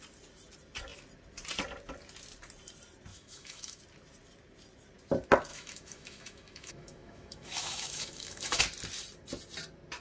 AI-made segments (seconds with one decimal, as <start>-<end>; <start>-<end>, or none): 3.1-3.8; 5.5-8.6